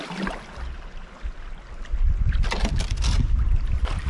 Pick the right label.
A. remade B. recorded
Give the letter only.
B